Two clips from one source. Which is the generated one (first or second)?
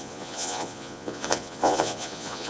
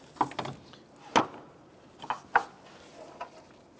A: first